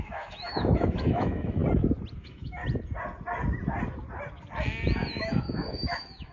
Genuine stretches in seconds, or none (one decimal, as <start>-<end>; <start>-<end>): 1.6-2.2; 2.6-4.6